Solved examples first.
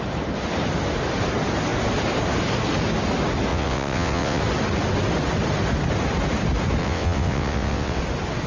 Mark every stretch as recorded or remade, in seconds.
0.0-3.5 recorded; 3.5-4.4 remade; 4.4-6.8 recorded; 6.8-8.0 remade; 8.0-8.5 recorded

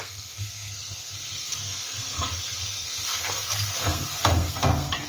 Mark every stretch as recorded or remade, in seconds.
0.0-5.1 remade

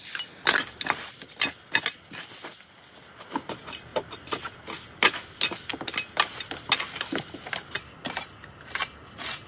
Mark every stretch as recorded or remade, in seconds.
0.0-9.5 recorded

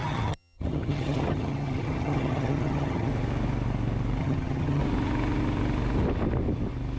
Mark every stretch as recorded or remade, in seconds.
0.0-3.1 remade; 3.1-4.2 recorded; 4.2-4.8 remade; 4.8-7.0 recorded

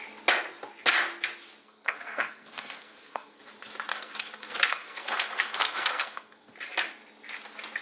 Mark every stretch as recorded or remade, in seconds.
0.0-1.6 recorded; 1.6-3.4 remade; 3.4-3.9 recorded; 3.9-6.5 remade; 6.5-7.8 recorded

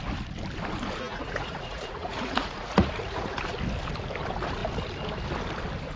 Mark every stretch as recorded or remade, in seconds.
0.0-1.1 recorded; 1.1-3.4 remade; 3.4-6.0 recorded